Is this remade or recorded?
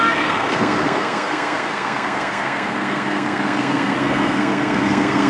remade